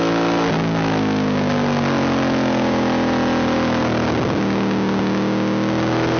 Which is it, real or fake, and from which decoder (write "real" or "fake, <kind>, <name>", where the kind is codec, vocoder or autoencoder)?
real